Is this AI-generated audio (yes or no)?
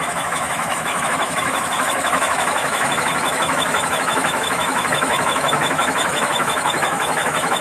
yes